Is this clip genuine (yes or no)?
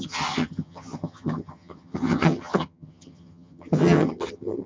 no